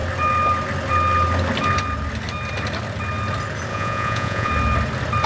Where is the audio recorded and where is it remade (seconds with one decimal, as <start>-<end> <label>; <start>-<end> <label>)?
0.0-3.7 recorded; 3.7-4.5 remade; 4.5-5.3 recorded